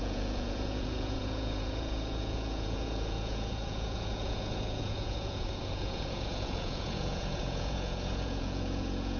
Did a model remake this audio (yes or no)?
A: yes